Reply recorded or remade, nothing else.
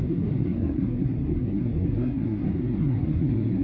remade